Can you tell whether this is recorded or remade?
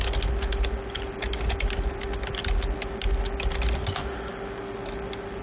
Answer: recorded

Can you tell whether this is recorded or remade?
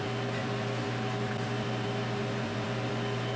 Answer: recorded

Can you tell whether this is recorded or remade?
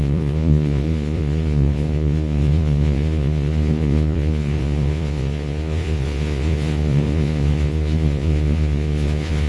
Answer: remade